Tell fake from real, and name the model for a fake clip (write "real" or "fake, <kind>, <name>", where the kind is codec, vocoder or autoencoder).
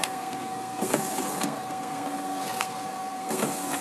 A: fake, codec, SNAC